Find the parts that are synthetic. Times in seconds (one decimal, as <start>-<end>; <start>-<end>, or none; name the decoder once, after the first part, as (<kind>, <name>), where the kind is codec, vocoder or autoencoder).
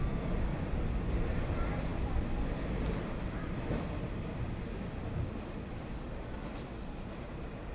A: 0.5-1.1 (vocoder, BigVGAN v2)